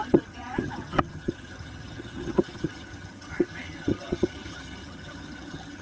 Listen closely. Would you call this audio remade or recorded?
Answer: remade